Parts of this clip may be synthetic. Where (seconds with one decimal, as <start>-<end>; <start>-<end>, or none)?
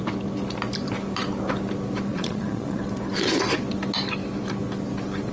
2.1-2.8